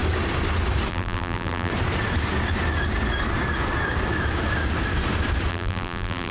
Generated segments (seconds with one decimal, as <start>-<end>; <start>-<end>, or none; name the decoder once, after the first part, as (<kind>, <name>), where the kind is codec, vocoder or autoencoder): 0.9-1.7 (vocoder, BigVGAN v2); 5.5-6.3